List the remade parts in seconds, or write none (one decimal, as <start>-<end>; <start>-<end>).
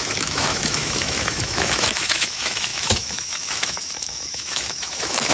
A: 0.0-5.3